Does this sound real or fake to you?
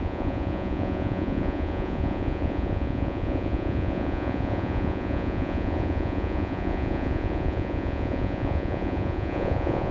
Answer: fake